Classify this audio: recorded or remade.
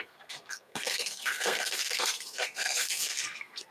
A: remade